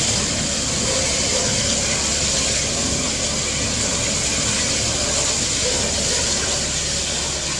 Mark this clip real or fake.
real